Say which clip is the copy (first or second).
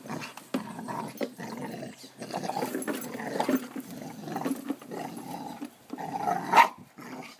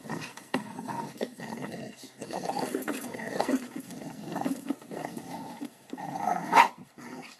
second